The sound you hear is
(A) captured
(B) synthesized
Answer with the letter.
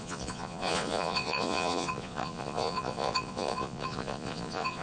B